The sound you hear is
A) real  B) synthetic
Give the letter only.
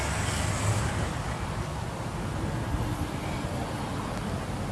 A